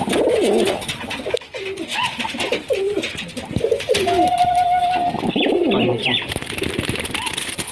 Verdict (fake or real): real